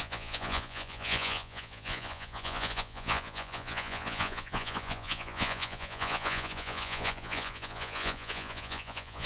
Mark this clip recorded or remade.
remade